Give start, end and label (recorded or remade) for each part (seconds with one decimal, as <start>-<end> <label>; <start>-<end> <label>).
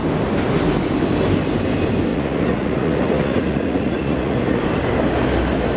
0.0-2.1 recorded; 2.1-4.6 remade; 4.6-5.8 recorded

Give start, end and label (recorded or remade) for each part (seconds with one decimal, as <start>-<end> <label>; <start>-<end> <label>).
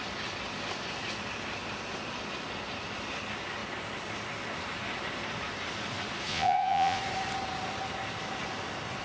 0.0-6.3 recorded; 6.3-7.0 remade; 7.0-9.0 recorded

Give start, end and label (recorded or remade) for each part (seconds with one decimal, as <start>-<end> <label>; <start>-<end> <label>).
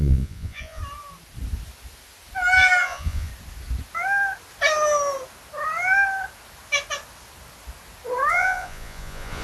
0.0-0.8 remade; 0.8-2.8 recorded; 2.8-3.3 remade; 3.3-8.3 recorded; 8.3-9.4 remade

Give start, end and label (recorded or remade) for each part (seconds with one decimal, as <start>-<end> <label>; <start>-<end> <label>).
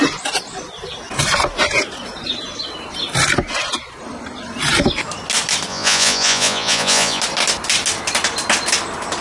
0.0-5.7 recorded; 5.7-7.2 remade; 7.2-9.2 recorded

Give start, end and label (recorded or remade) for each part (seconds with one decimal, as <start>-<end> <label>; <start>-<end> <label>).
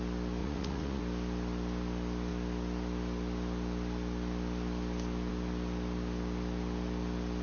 0.0-0.4 recorded; 0.4-1.0 remade; 1.0-7.4 recorded